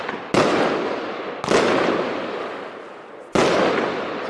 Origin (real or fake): real